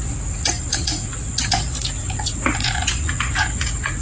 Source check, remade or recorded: remade